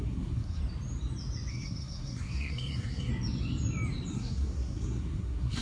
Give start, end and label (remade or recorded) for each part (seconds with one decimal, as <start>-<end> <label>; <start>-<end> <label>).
0.0-0.6 remade; 0.6-1.5 recorded; 1.5-3.1 remade; 3.1-4.1 recorded; 4.1-5.6 remade